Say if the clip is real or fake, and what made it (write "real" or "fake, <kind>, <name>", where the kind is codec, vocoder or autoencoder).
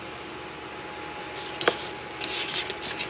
real